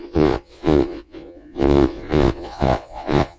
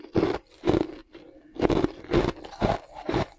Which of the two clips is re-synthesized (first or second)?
first